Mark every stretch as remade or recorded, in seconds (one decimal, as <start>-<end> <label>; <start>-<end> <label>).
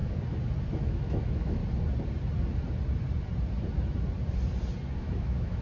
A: 0.0-0.7 recorded; 0.7-1.6 remade; 1.6-5.0 recorded; 5.0-5.6 remade